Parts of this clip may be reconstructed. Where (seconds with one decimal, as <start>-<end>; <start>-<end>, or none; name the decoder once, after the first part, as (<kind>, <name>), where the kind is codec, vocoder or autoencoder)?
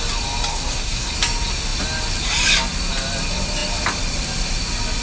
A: 0.5-1.1 (codec, SNAC)